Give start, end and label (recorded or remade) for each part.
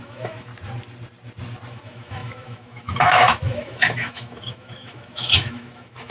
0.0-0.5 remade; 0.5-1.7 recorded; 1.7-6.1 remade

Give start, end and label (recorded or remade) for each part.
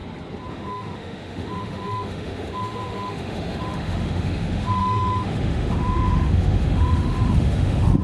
0.0-0.5 recorded; 0.5-8.0 remade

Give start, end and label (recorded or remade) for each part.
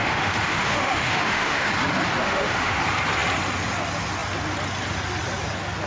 0.0-1.7 remade; 1.7-2.2 recorded; 2.2-2.8 remade; 2.8-5.9 recorded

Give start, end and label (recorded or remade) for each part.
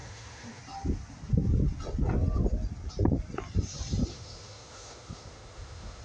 0.0-0.6 remade; 0.6-4.1 recorded; 4.1-6.0 remade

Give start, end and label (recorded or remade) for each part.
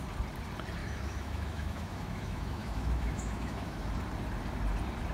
0.0-0.8 recorded; 0.8-3.9 remade; 3.9-5.1 recorded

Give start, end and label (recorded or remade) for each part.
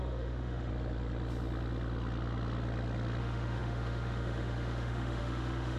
0.0-0.7 remade; 0.7-3.2 recorded; 3.2-5.8 remade